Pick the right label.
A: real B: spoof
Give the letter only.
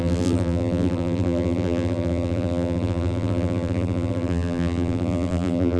B